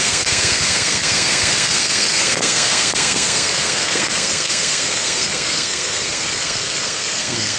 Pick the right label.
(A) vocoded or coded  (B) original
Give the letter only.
A